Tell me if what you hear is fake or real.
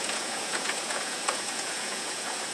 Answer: fake